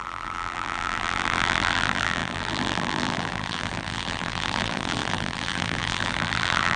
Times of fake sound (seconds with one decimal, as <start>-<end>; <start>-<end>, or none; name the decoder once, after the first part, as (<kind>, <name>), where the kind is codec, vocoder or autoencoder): 0.0-6.8 (vocoder, BigVGAN v2)